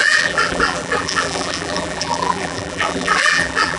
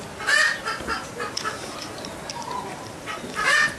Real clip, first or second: second